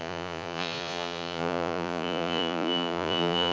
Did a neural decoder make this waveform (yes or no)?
yes